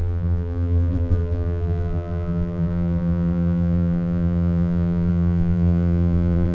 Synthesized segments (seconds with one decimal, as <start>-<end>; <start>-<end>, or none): 0.0-6.5